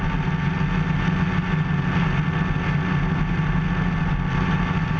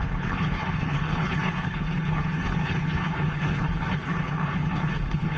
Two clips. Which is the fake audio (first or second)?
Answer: second